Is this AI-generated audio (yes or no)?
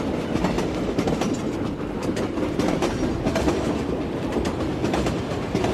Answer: no